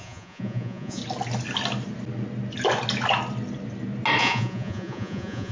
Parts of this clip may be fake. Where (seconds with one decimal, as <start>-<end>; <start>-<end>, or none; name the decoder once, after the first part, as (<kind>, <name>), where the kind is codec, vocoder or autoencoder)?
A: 0.0-1.0 (vocoder, Vocos); 4.2-5.5